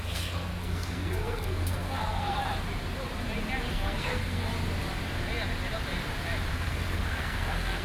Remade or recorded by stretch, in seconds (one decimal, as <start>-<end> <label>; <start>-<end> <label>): 0.0-2.4 remade; 2.4-3.7 recorded; 3.7-4.5 remade; 4.5-6.5 recorded; 6.5-7.8 remade